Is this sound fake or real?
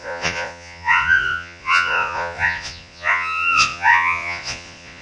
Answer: fake